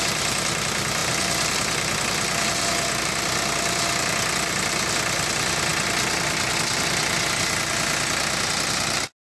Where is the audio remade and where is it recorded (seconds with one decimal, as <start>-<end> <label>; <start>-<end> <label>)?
0.0-9.2 recorded